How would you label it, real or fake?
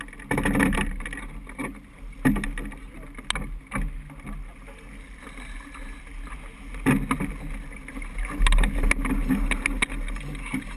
real